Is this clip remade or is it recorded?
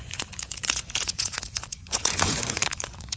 remade